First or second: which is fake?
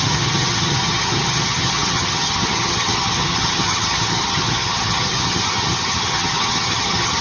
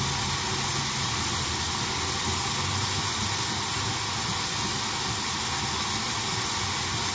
first